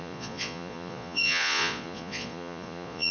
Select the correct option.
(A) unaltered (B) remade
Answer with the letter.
B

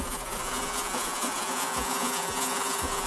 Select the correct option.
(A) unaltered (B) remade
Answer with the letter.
B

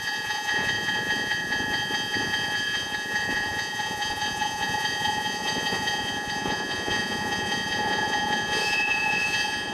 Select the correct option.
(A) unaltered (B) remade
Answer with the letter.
B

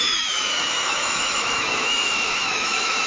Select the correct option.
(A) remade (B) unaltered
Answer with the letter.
A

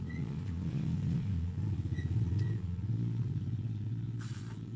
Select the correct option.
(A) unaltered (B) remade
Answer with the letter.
B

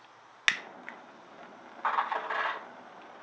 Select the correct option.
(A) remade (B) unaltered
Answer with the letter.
B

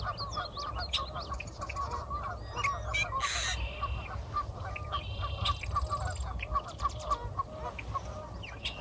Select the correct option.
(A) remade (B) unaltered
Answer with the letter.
B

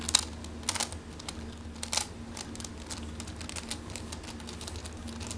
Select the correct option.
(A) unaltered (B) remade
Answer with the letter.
A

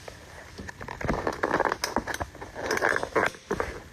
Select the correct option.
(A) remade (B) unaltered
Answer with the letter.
B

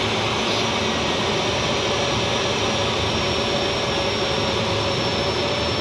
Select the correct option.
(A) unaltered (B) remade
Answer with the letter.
A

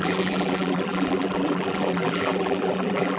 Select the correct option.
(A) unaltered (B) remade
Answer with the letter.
B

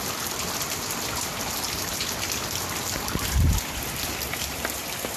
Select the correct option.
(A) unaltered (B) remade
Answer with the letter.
A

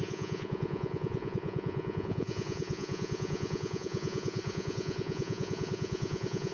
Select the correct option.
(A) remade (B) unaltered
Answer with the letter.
A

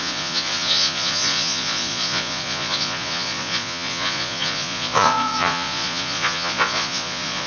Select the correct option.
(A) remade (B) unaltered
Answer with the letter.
A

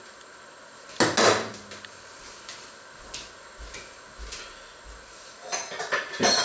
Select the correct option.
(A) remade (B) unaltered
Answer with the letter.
B